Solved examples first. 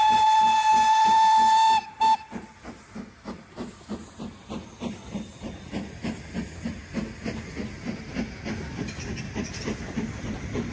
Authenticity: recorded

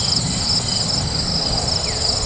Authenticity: recorded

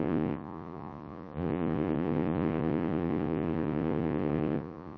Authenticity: remade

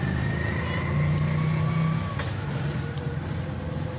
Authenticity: recorded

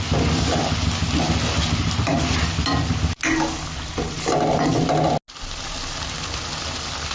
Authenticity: recorded